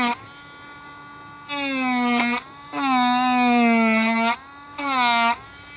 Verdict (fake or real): real